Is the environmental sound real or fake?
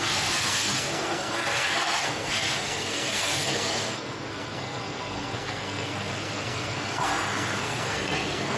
fake